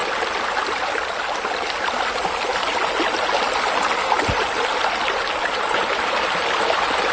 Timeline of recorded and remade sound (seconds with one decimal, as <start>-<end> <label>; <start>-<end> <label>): 0.0-7.1 recorded